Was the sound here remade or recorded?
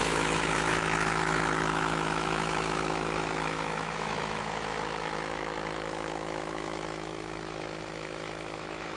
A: remade